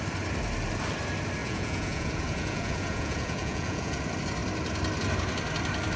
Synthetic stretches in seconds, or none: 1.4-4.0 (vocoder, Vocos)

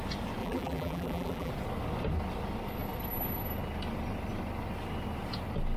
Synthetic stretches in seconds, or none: 0.4-1.5 (vocoder, BigVGAN v2)

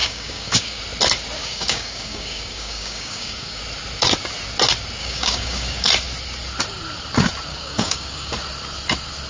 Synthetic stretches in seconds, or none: 0.0-0.8 (codec, DAC); 1.4-3.6; 5.0-5.9; 7.5-8.3

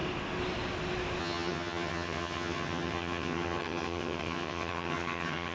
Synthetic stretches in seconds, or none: 1.2-5.5 (vocoder, HiFi-GAN)

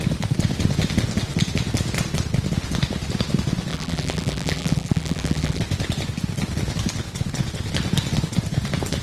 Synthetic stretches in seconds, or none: 3.7-5.6 (vocoder, BigVGAN v2)

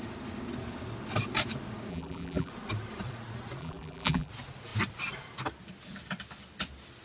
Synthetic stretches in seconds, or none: 1.9-2.5 (vocoder, BigVGAN v2); 3.6-4.3